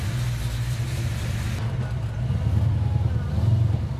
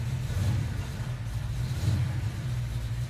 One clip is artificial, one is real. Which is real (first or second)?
first